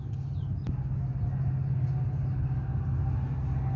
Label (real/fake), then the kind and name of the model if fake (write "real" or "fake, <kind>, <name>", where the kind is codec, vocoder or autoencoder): real